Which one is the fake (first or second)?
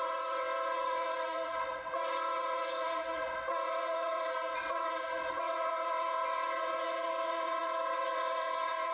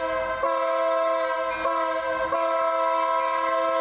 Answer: first